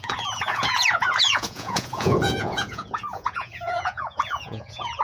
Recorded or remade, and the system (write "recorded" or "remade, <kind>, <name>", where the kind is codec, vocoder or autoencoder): remade, vocoder, Vocos